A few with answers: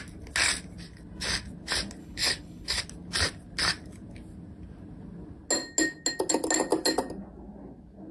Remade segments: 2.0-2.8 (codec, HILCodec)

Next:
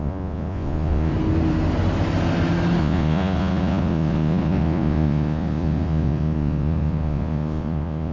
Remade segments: 0.0-1.1 (vocoder, Vocos); 2.8-8.1

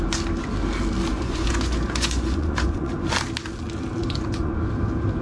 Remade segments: 1.1-2.9 (vocoder, Vocos); 4.0-4.6

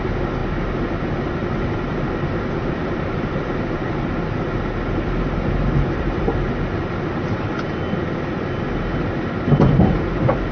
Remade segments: none

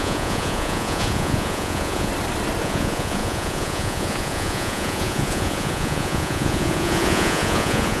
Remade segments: 0.0-2.1 (vocoder, Vocos); 2.6-8.0